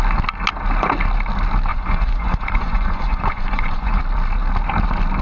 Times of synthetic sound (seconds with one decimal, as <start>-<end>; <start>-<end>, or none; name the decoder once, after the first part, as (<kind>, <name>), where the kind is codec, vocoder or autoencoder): 1.7-4.0 (vocoder, Vocos)